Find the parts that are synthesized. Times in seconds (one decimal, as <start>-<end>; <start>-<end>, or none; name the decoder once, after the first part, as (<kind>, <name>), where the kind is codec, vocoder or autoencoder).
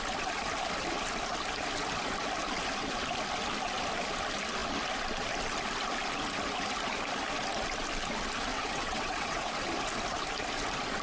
8.5-9.5 (vocoder, WaveNeXt)